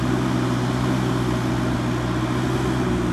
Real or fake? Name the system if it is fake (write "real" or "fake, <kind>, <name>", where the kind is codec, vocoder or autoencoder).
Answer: real